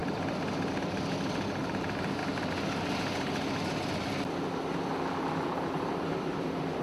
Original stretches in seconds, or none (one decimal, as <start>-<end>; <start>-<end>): 0.0-1.6; 2.2-5.7